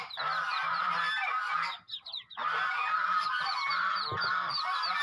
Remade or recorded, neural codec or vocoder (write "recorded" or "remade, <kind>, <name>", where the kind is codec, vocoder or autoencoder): recorded